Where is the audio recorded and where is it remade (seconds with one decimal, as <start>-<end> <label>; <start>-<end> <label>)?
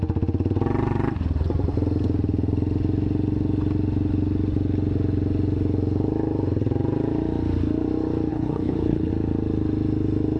0.0-8.3 recorded; 8.3-9.1 remade; 9.1-10.4 recorded